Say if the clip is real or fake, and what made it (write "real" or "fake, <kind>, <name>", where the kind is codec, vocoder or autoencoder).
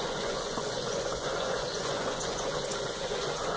fake, vocoder, Vocos